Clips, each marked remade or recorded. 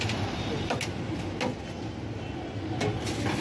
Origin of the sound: recorded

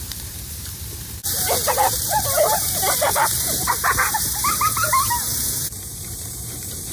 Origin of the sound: remade